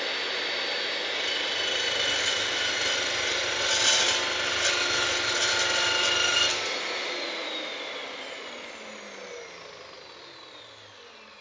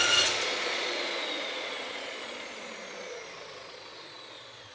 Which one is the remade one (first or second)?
second